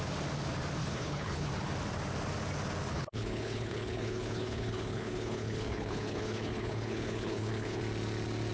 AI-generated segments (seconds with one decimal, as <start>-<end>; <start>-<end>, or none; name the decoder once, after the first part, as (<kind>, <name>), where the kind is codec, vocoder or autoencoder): 0.8-1.5 (codec, HILCodec); 2.9-7.8